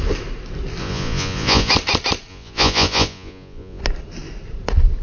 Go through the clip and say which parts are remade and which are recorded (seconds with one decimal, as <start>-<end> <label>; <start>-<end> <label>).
0.0-0.8 recorded; 0.8-1.7 remade; 1.7-2.3 recorded; 2.3-3.8 remade; 3.8-5.0 recorded